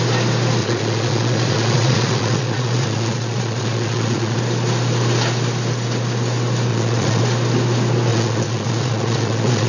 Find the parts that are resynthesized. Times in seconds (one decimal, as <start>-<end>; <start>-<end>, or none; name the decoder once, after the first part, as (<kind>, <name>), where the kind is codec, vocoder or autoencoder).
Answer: 0.6-4.4 (vocoder, Vocos); 6.7-7.2; 8.1-9.7